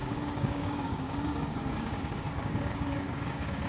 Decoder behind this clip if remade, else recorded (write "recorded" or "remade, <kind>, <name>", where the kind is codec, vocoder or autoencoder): remade, codec, DAC